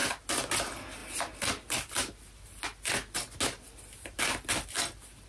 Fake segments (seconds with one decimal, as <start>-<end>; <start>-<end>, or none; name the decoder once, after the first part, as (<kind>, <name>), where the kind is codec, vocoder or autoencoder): none